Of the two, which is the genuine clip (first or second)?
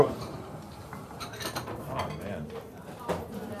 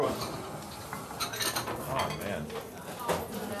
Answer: second